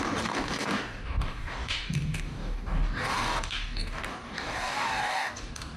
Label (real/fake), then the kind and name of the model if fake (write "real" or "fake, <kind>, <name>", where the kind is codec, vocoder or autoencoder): fake, codec, DAC